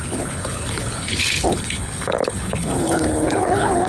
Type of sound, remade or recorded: remade